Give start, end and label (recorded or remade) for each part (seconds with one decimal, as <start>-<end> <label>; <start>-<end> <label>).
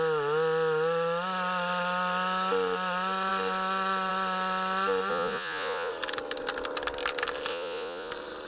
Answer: 0.0-5.1 recorded; 5.1-5.9 remade; 5.9-7.5 recorded; 7.5-8.1 remade; 8.1-8.5 recorded